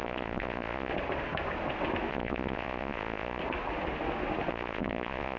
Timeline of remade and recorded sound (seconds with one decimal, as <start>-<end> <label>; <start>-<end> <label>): 0.0-0.9 remade; 0.9-2.1 recorded; 2.1-3.4 remade; 3.4-4.5 recorded; 4.5-5.4 remade